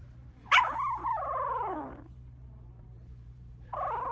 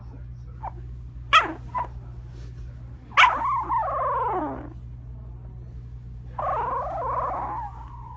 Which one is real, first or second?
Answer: second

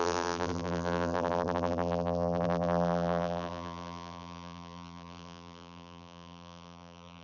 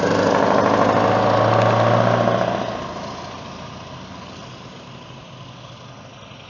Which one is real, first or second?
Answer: second